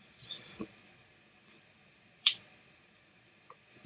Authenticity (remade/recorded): remade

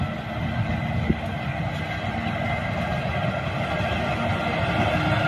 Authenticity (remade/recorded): recorded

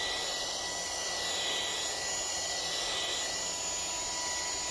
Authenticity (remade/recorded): recorded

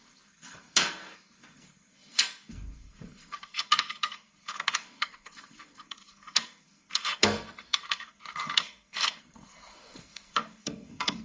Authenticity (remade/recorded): remade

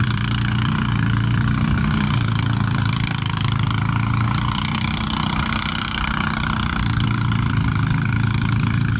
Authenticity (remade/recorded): remade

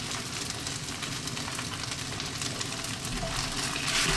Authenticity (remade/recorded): recorded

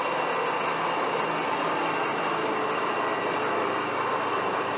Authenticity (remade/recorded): recorded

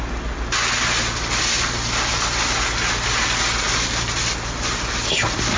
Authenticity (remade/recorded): recorded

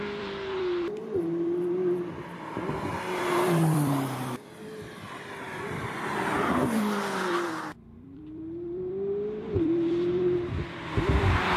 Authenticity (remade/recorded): remade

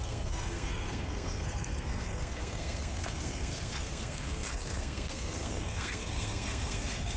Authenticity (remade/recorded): remade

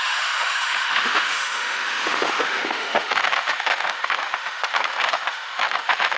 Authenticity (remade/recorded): remade